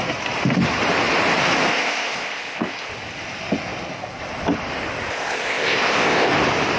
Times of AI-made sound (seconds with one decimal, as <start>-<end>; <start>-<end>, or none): 1.7-2.9; 5.1-6.3